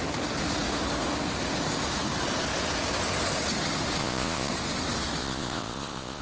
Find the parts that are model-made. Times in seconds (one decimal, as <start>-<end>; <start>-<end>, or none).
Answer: 4.0-4.5; 5.2-6.2